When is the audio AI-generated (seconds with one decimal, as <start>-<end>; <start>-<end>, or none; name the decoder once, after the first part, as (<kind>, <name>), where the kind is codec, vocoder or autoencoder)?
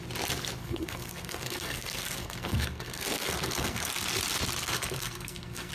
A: 0.6-4.0 (codec, SNAC); 4.6-5.7